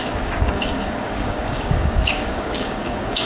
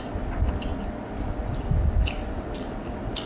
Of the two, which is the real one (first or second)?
second